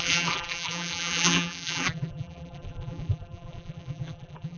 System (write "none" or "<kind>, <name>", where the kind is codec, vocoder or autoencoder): vocoder, BigVGAN v2